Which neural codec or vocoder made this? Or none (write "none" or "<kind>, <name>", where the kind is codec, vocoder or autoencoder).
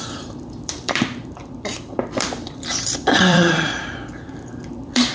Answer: vocoder, BigVGAN v2